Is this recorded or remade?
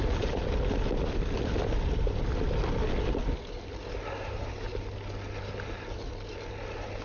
recorded